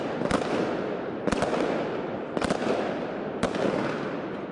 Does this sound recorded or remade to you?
recorded